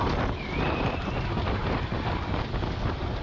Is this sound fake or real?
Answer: real